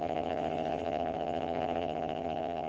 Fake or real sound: fake